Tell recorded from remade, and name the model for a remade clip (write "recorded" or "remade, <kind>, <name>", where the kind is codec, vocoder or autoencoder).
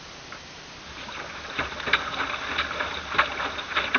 recorded